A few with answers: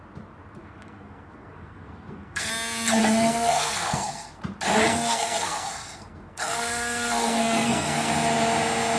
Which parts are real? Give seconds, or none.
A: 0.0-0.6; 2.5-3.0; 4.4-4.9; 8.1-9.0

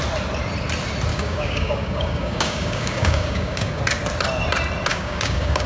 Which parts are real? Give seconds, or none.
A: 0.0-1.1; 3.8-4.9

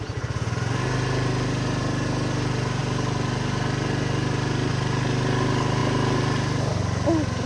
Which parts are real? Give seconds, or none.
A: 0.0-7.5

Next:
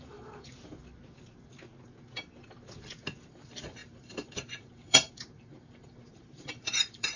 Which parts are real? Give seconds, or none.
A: 0.8-3.3